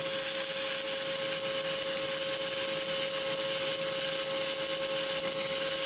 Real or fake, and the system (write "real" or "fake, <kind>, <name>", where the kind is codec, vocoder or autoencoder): real